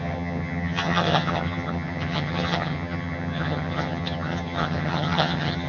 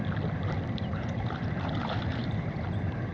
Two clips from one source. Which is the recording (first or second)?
second